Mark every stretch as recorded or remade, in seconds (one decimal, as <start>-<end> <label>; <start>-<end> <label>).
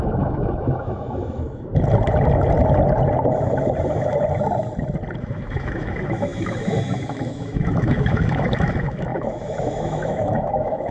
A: 0.0-1.7 remade; 1.7-5.2 recorded; 5.2-10.9 remade